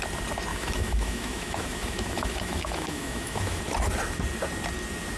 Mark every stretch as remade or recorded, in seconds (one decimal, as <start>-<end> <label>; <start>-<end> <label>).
0.0-0.5 recorded; 0.5-3.6 remade; 3.6-5.2 recorded